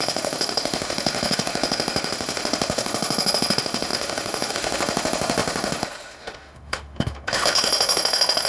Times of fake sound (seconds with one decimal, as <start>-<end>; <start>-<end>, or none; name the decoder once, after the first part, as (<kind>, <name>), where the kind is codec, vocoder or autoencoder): 0.0-8.5 (autoencoder, DAC-VAE)